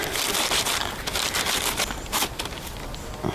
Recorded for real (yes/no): yes